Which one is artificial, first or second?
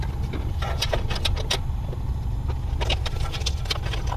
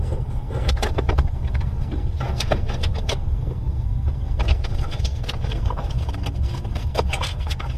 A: second